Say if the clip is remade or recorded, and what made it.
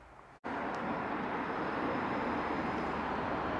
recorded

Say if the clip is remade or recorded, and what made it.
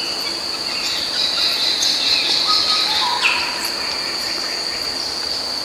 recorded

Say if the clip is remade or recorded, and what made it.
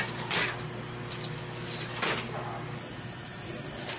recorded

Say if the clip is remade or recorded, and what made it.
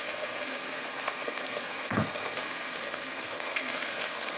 remade, codec, SNAC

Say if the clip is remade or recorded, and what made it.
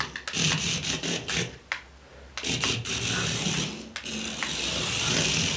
recorded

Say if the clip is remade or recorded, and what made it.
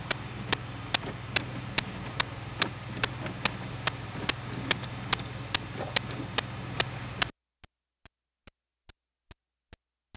recorded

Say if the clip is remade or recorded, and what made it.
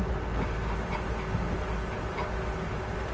recorded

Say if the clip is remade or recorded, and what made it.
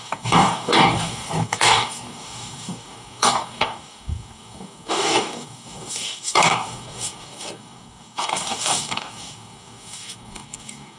remade, codec, DAC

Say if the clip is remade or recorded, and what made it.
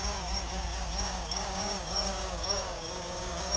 remade, codec, DAC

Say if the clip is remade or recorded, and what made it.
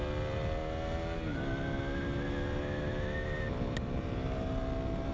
recorded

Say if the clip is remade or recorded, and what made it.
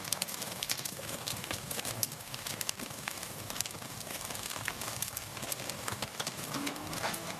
remade, codec, DAC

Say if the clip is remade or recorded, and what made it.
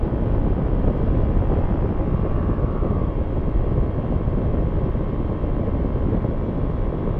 recorded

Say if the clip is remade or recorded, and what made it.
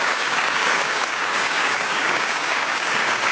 remade, codec, DAC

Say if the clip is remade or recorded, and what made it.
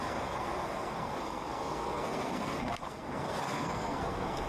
remade, codec, SNAC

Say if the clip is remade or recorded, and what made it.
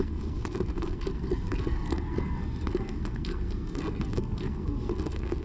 remade, codec, SNAC